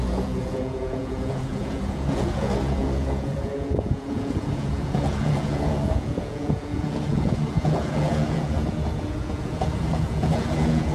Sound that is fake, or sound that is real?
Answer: fake